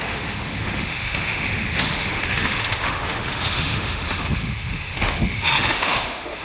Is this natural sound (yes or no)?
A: no